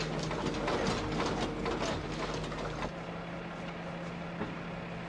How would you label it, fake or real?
real